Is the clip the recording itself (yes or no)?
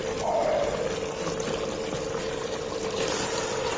yes